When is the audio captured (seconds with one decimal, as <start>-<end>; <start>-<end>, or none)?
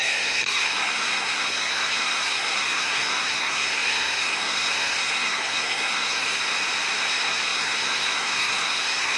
6.4-7.0